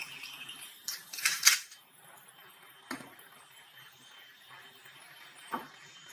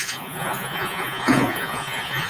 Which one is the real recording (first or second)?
first